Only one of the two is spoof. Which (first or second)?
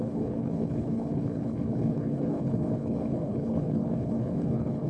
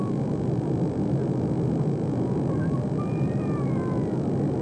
first